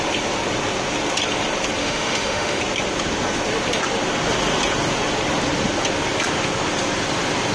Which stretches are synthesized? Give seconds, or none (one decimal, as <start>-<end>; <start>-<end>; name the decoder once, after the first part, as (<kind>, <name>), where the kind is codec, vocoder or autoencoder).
1.8-2.6 (autoencoder, DAC-VAE)